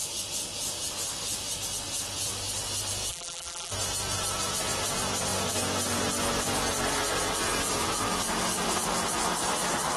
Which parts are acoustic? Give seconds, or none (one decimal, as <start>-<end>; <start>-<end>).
0.0-3.1; 3.7-10.0